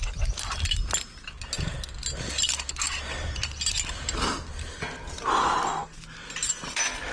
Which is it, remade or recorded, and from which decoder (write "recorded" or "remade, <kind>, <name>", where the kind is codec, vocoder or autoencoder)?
recorded